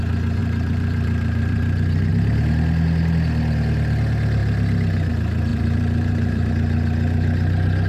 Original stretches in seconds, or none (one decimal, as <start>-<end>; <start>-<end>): 0.0-0.4; 2.1-5.5; 6.5-7.9